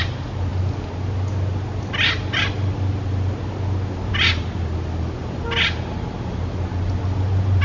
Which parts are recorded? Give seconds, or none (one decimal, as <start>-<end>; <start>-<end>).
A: 0.0-7.6